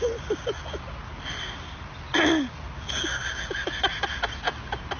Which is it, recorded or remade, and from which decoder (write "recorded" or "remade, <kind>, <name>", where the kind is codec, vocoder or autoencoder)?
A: recorded